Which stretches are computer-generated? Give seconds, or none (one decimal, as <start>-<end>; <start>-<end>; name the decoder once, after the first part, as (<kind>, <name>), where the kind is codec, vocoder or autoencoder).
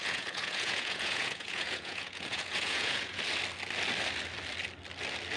0.0-3.2 (vocoder, Vocos)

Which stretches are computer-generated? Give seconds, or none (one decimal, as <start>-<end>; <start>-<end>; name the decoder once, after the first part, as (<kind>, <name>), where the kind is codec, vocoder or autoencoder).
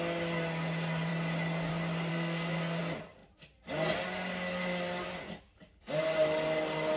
2.1-2.8 (codec, SNAC)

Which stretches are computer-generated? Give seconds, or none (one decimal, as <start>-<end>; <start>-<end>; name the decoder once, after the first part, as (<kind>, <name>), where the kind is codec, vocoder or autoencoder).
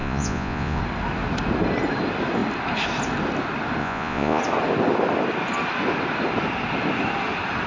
0.0-0.8 (vocoder, Vocos); 3.8-4.4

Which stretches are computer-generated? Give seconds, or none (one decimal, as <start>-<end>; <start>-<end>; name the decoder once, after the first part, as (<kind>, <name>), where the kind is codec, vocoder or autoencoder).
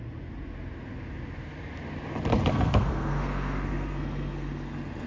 2.5-5.1 (codec, SNAC)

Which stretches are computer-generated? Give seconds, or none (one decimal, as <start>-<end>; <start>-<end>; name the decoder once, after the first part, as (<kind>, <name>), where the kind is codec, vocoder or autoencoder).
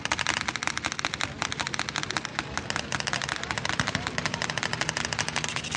none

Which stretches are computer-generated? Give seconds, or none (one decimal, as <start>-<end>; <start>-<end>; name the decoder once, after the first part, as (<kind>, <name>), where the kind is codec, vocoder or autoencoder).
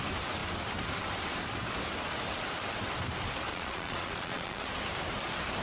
3.5-4.7 (vocoder, Vocos)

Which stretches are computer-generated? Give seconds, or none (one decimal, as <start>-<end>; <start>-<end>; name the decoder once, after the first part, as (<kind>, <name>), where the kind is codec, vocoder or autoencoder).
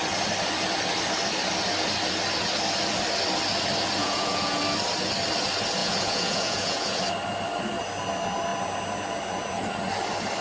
4.0-4.6 (vocoder, Vocos); 5.8-7.0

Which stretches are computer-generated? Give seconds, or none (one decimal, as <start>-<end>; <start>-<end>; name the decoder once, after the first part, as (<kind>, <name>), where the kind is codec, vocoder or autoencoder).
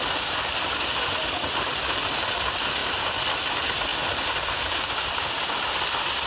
none